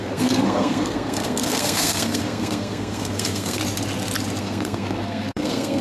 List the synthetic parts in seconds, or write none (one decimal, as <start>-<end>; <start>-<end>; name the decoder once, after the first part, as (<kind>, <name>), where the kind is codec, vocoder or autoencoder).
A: 0.0-3.6 (codec, SNAC); 4.4-5.8